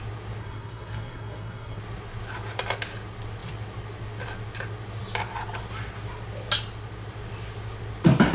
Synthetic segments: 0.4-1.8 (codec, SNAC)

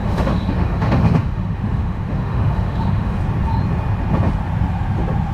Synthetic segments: 0.0-3.2 (autoencoder, DAC-VAE)

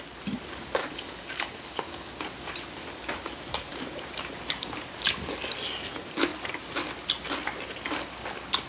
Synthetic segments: 0.8-2.2 (codec, DAC)

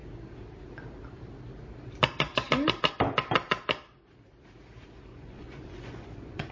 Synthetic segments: 5.1-6.5 (vocoder, Vocos)